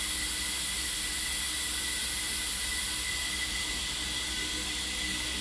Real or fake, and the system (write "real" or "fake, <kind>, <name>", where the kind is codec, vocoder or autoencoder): real